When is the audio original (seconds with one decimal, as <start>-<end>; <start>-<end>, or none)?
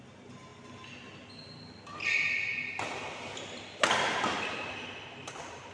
0.0-5.7